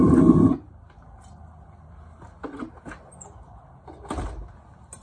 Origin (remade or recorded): recorded